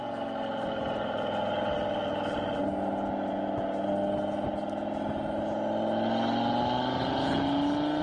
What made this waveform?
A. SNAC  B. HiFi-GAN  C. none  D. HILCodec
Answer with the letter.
C